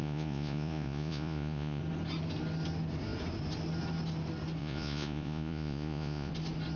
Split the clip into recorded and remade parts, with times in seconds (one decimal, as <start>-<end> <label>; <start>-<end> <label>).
0.0-1.8 remade; 1.8-4.6 recorded; 4.6-6.3 remade; 6.3-6.8 recorded

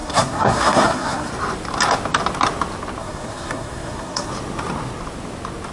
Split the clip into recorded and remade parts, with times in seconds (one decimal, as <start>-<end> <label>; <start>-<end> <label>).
0.0-1.3 remade; 1.3-3.0 recorded; 3.0-4.3 remade; 4.3-5.7 recorded

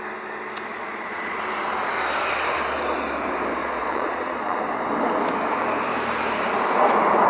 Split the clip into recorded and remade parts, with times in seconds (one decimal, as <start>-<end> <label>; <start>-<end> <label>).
0.0-0.7 recorded; 0.7-1.4 remade; 1.4-3.6 recorded; 3.6-4.6 remade; 4.6-7.3 recorded

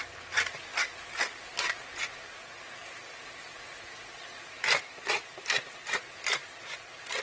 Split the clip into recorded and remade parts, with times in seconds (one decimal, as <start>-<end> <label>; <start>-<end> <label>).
0.0-7.2 recorded

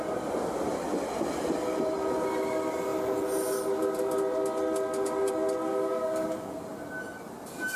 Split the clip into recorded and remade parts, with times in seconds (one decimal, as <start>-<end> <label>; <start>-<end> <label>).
0.0-5.7 recorded; 5.7-6.5 remade; 6.5-7.8 recorded

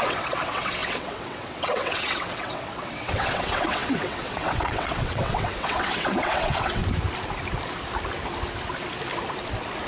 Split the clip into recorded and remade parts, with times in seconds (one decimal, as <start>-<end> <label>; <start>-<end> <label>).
0.0-6.8 remade; 6.8-9.9 recorded

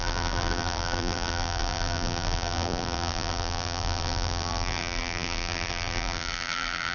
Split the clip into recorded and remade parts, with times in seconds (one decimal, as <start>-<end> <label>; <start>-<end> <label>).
0.0-6.9 remade